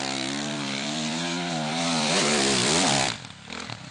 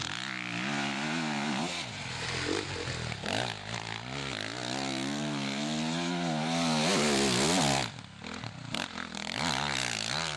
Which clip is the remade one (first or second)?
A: first